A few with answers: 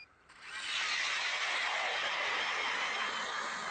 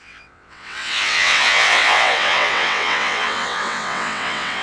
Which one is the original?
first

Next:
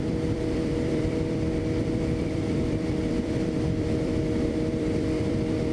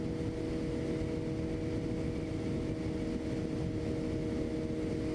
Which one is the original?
second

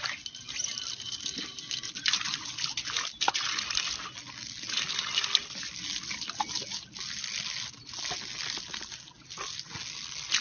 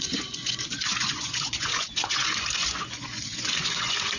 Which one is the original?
first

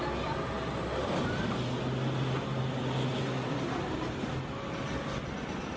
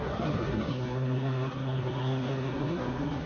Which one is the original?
first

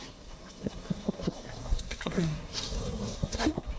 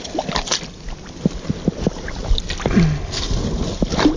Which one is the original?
second